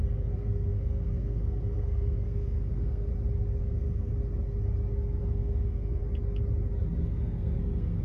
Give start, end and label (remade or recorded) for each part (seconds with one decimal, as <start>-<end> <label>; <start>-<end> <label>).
0.0-3.1 remade; 3.1-3.6 recorded; 3.6-4.1 remade; 4.1-5.2 recorded; 5.2-6.0 remade; 6.0-7.0 recorded; 7.0-8.0 remade